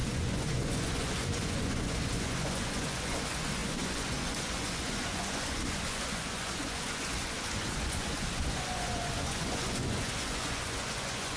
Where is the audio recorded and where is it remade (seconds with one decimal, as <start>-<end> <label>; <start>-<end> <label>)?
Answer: 0.0-11.4 remade